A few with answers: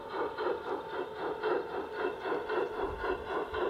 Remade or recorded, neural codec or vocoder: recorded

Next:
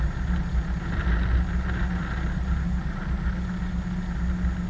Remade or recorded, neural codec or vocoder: recorded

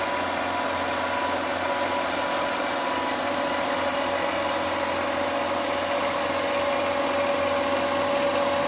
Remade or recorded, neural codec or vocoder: recorded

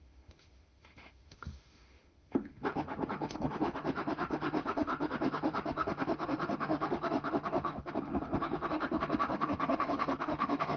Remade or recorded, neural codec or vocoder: remade, autoencoder, DAC-VAE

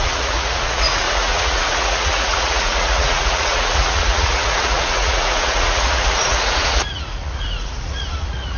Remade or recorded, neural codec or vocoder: remade, vocoder, Vocos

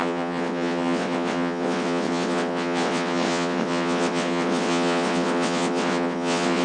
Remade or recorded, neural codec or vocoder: remade, vocoder, WaveNeXt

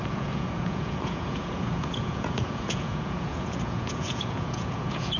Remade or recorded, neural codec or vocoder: remade, vocoder, Vocos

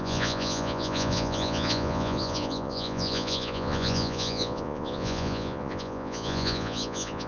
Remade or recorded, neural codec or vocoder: remade, vocoder, Vocos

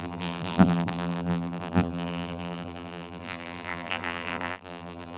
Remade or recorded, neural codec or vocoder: remade, vocoder, BigVGAN v2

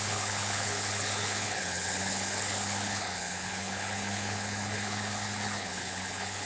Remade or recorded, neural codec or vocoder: remade, codec, HILCodec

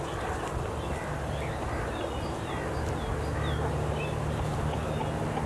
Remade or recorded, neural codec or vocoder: recorded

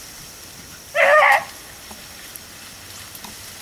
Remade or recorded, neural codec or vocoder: recorded